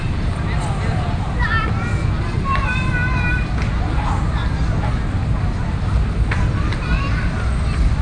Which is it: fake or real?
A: real